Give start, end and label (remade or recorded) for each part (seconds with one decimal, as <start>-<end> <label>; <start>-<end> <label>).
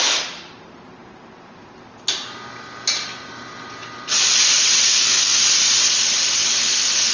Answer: 0.0-4.8 recorded; 4.8-5.4 remade; 5.4-7.1 recorded